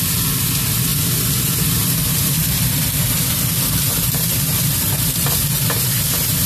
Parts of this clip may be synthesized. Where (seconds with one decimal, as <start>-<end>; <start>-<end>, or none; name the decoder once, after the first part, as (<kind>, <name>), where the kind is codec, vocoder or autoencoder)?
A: none

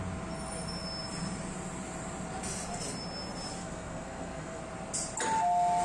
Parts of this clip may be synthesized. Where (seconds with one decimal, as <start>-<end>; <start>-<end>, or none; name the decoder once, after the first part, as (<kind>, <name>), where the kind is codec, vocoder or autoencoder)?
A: 3.6-4.6 (codec, SNAC)

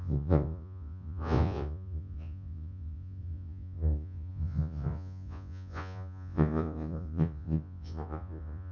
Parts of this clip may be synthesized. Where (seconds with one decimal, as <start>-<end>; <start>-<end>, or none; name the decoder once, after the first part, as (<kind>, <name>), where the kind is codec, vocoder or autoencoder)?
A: 0.0-8.7 (vocoder, Vocos)

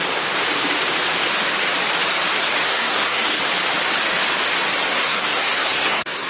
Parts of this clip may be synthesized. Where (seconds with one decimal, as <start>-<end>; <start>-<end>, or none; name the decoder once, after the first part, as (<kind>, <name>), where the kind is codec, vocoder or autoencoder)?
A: 2.6-3.4 (codec, SNAC); 4.9-6.3